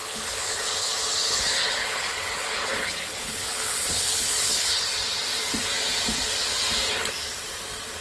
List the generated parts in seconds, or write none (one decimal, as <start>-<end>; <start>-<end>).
0.0-4.8